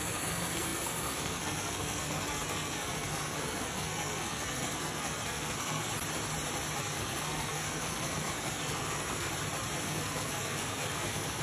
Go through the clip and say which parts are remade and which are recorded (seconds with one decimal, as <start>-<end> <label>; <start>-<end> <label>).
0.0-5.9 remade; 5.9-6.8 recorded; 6.8-9.3 remade; 9.3-9.8 recorded; 9.8-11.4 remade